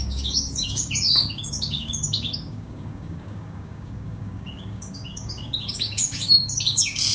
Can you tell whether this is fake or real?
fake